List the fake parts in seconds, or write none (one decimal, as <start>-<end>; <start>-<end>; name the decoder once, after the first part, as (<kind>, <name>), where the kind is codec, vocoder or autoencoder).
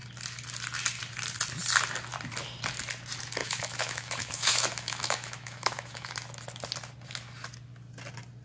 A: 3.4-6.1 (autoencoder, DAC-VAE)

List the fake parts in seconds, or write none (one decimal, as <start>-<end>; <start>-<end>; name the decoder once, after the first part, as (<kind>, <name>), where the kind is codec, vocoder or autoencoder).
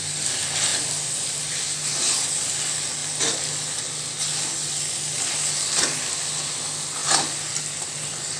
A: none